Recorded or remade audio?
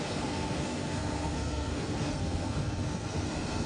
remade